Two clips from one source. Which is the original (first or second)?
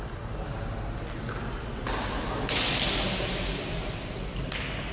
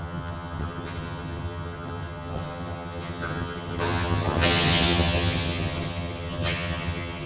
first